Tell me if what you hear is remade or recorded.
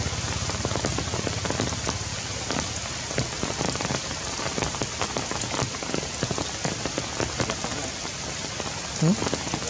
recorded